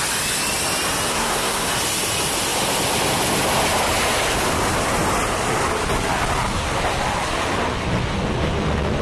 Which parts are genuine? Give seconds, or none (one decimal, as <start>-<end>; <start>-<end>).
0.0-1.1; 1.7-9.0